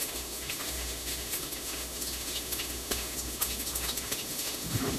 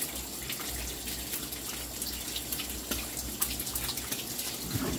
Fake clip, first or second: first